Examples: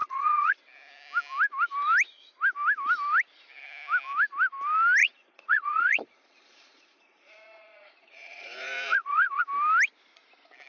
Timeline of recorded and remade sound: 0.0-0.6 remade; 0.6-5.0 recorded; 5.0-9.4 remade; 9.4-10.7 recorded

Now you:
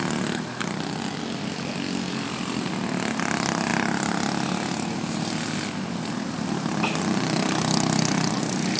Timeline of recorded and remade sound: 0.0-8.8 recorded

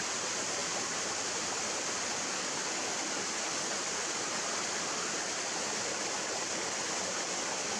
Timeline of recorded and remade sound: 0.0-7.8 recorded

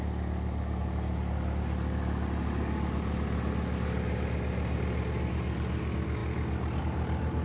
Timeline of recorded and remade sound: 0.0-7.4 recorded

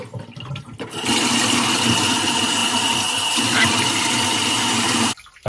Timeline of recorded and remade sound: 0.0-5.5 recorded

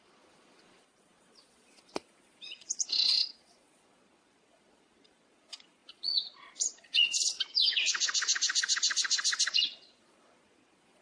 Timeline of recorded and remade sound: 0.0-11.0 remade

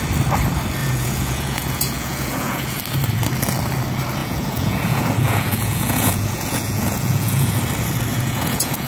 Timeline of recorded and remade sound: 0.0-0.8 recorded; 0.8-2.8 remade; 2.8-4.2 recorded; 4.2-7.6 remade; 7.6-8.1 recorded; 8.1-8.9 remade